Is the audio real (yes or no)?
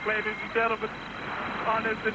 no